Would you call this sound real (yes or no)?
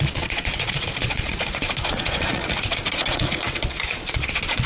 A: no